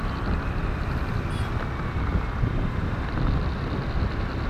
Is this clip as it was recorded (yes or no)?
no